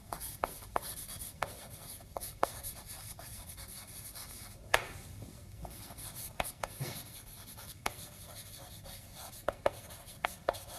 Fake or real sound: fake